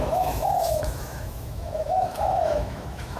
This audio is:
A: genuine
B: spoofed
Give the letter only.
B